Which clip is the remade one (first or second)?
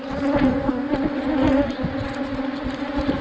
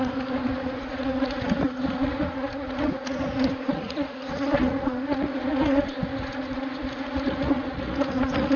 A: second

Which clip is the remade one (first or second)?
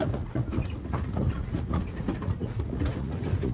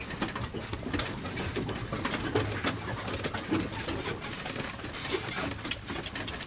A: first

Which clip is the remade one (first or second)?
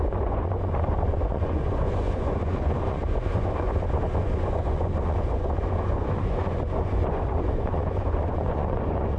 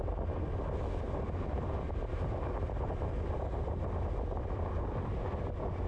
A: first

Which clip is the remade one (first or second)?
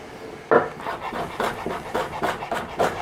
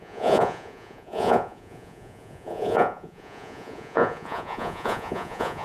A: second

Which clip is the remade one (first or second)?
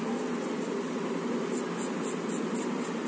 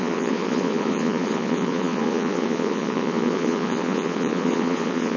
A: second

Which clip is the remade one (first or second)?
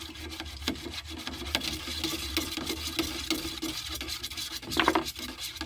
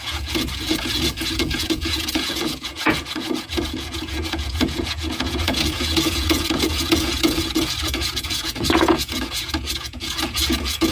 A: second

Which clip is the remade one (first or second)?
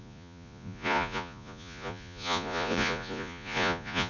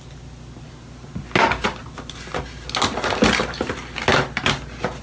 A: first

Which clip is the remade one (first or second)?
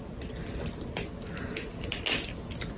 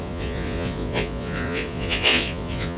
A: second